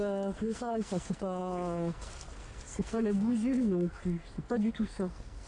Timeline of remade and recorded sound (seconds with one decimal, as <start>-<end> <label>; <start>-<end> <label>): 0.0-5.5 remade